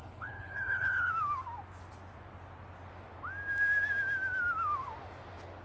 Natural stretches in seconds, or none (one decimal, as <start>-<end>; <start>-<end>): 1.1-5.6